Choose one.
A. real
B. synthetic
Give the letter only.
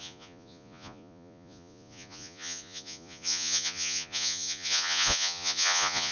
B